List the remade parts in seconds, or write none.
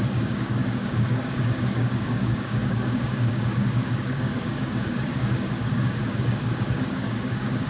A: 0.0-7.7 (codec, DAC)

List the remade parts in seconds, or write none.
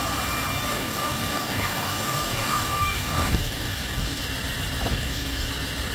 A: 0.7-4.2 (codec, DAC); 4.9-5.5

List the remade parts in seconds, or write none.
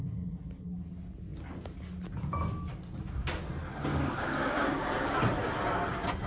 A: 3.9-5.2 (codec, DAC)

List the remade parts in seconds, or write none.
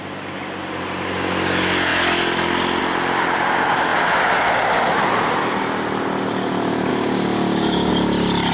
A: 6.9-7.9 (codec, DAC)